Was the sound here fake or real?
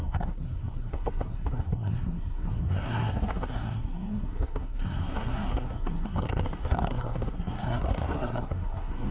fake